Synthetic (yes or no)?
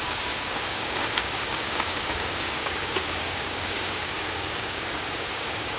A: yes